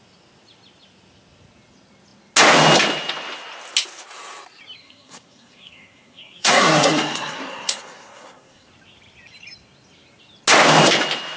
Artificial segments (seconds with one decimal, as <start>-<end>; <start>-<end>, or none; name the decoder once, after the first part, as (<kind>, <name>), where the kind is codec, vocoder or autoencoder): 4.8-8.7 (codec, SNAC)